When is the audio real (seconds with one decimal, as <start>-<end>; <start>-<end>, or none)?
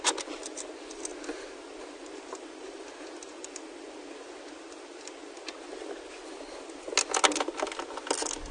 0.0-1.1; 5.3-8.5